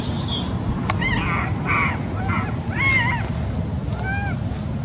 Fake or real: real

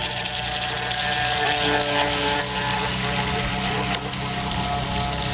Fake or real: real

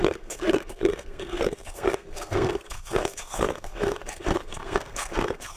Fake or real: fake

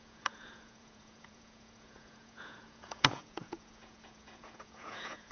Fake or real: fake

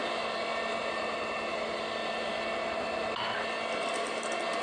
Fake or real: real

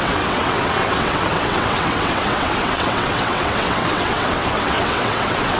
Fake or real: fake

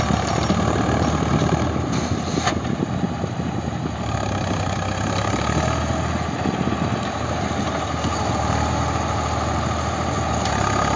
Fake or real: real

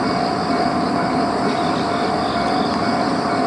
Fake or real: real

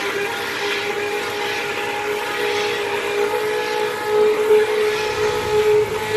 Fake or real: real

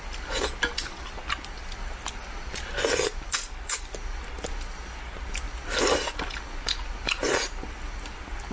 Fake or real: real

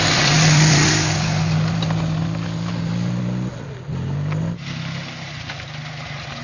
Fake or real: real